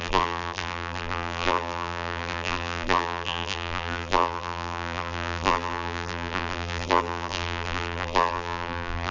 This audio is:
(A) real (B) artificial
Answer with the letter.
B